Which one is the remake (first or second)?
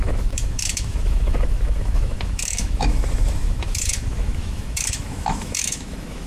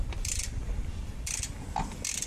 first